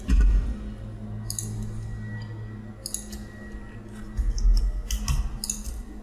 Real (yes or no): yes